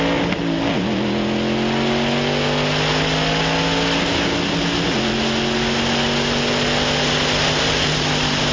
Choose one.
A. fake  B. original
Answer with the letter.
B